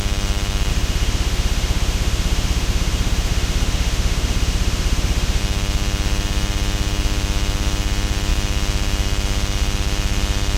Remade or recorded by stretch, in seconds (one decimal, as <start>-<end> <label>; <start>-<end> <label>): 0.0-0.7 recorded; 0.7-5.4 remade; 5.4-10.6 recorded

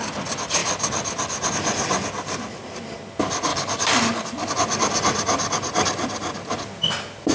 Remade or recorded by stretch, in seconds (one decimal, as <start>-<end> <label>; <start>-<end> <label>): 0.0-3.5 recorded; 3.5-4.5 remade; 4.5-7.3 recorded

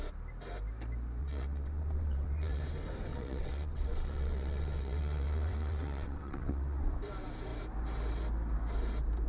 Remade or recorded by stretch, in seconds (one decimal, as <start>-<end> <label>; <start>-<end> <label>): 0.0-1.2 recorded; 1.2-2.6 remade; 2.6-3.1 recorded; 3.1-7.0 remade; 7.0-9.3 recorded

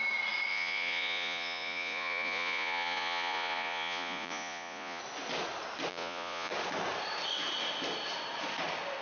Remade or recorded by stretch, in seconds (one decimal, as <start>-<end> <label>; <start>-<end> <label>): 0.0-0.5 recorded; 0.5-5.0 remade; 5.0-5.9 recorded; 5.9-6.5 remade; 6.5-9.0 recorded

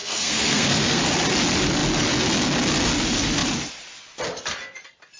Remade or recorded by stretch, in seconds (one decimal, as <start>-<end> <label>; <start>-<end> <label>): 0.0-1.0 remade; 1.0-5.2 recorded

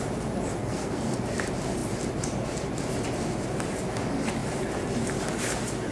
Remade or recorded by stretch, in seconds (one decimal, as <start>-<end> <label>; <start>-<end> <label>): 0.0-0.6 recorded; 0.6-1.2 remade; 1.2-5.9 recorded